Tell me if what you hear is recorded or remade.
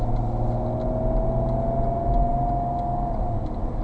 recorded